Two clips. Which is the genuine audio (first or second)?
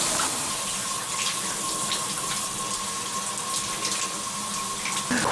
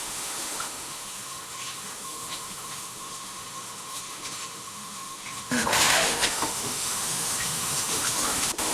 first